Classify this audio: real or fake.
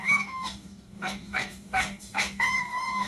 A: fake